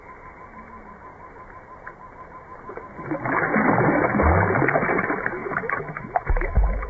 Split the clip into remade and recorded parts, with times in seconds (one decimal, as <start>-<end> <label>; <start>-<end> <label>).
0.0-5.4 recorded; 5.4-6.9 remade